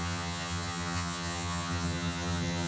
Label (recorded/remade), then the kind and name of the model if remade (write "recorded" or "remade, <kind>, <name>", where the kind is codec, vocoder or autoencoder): remade, vocoder, HiFi-GAN